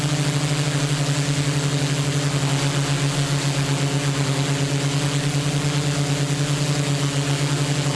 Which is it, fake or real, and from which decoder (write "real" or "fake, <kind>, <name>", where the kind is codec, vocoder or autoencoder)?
real